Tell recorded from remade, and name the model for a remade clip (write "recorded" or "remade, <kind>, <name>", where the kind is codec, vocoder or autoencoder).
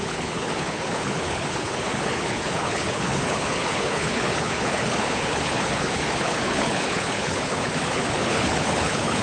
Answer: remade, codec, HILCodec